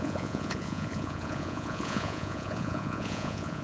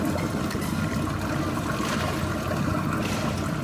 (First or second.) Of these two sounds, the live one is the second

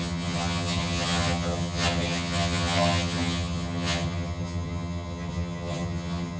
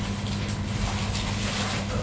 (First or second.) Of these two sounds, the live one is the second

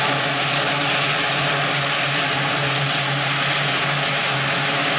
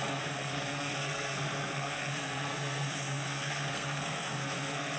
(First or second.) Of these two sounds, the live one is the first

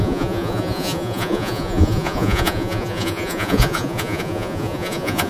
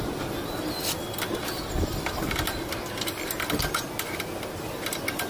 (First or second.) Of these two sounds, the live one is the second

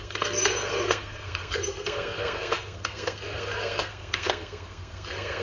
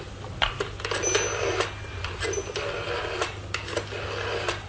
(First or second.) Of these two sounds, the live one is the second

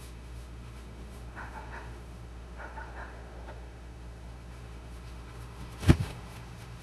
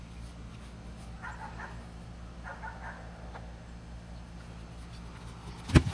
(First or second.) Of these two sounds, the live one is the second